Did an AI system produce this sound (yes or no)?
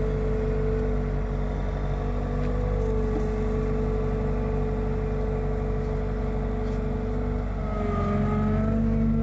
no